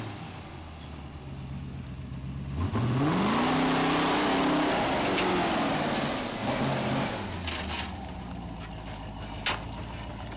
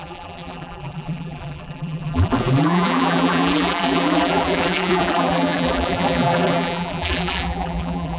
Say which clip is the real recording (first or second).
first